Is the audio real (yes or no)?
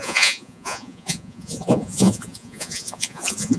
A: no